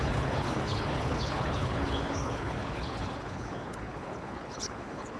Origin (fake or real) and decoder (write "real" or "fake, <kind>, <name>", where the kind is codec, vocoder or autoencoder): fake, codec, HILCodec